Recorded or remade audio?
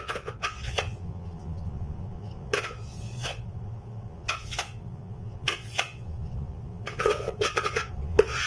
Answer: remade